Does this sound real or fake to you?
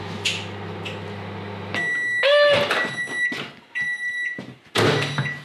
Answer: real